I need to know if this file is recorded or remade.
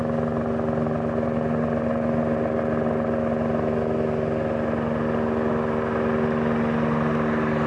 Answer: recorded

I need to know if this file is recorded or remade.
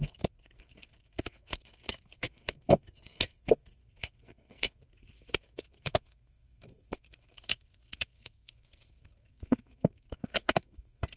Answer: remade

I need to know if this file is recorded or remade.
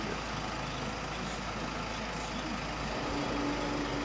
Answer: recorded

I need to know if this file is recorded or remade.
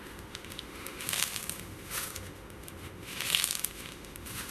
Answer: remade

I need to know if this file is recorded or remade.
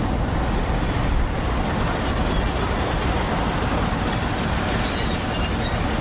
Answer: recorded